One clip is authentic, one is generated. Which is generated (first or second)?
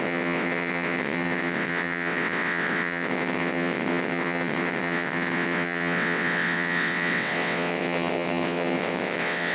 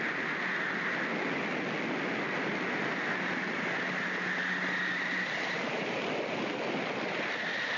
first